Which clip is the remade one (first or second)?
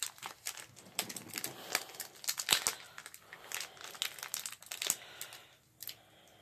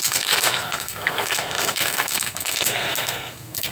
second